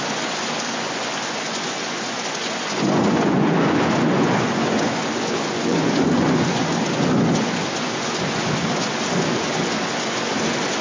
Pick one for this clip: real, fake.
fake